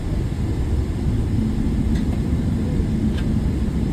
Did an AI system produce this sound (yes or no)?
no